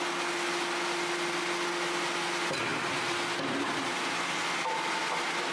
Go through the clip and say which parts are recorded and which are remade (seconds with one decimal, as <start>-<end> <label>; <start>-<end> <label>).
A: 0.0-5.5 recorded